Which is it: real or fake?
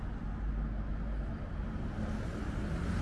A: real